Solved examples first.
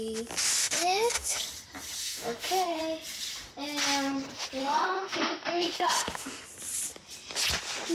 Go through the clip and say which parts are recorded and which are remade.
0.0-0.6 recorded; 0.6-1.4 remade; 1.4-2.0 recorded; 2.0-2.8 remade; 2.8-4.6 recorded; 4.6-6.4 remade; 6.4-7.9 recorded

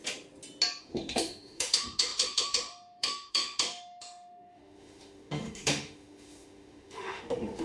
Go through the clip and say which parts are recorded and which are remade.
0.0-0.8 recorded; 0.8-7.6 remade

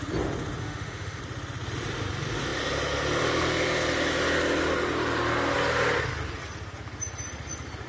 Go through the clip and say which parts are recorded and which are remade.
0.0-0.6 recorded; 0.6-1.2 remade; 1.2-7.9 recorded

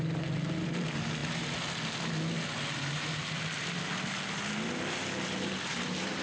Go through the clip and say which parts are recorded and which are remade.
0.0-6.2 recorded

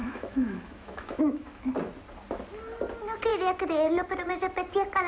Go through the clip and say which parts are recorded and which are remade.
0.0-1.7 remade; 1.7-5.1 recorded

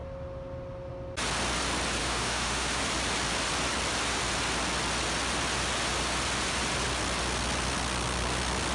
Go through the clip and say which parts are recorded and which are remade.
0.0-2.0 recorded; 2.0-2.8 remade; 2.8-8.7 recorded

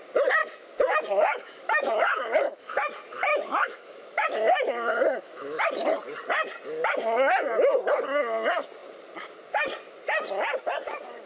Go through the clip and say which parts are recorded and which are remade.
0.0-0.4 recorded; 0.4-2.7 remade; 2.7-3.3 recorded; 3.3-5.6 remade; 5.6-11.3 recorded